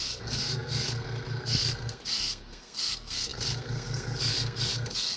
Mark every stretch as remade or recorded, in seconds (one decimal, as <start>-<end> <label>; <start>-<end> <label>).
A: 0.0-5.2 remade